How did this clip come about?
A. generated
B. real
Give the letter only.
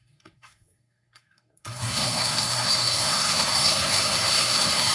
A